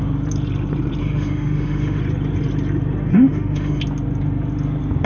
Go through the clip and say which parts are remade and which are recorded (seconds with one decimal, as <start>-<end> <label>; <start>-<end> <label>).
0.0-1.0 recorded; 1.0-2.0 remade; 2.0-3.1 recorded; 3.1-3.8 remade; 3.8-5.1 recorded